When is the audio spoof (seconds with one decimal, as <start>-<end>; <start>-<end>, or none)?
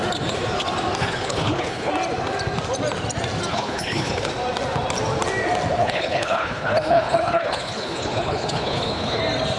1.0-1.9; 3.5-4.3; 5.8-9.2